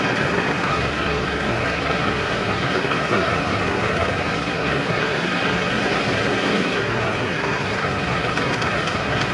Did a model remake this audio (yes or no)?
yes